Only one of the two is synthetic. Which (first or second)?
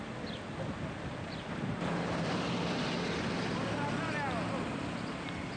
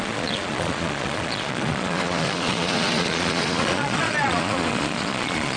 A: second